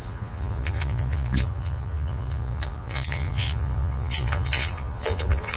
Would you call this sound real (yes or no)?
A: no